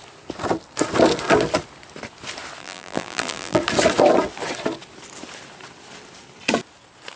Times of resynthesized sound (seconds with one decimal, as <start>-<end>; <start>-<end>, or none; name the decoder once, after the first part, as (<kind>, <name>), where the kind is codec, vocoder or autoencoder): 2.6-3.6 (vocoder, BigVGAN v2)